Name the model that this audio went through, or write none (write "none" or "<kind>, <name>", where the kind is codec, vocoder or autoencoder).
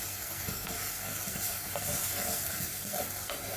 codec, SNAC